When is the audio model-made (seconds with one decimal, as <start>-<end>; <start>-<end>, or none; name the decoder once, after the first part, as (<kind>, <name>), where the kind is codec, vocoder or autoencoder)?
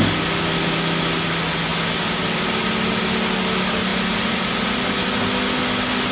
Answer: none